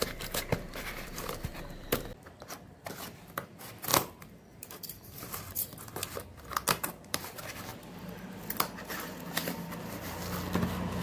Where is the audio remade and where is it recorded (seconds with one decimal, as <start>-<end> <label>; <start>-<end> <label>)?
0.0-7.7 remade; 7.7-11.0 recorded